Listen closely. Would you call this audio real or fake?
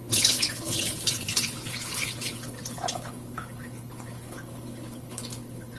fake